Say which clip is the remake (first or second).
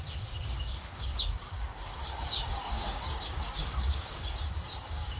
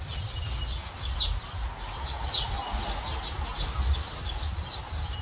first